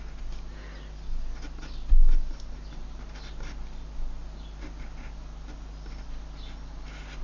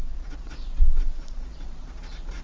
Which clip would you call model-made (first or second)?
second